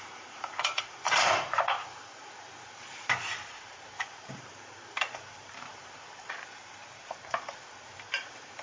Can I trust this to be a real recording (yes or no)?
no